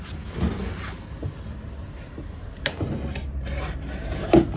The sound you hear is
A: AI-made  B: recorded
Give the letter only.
B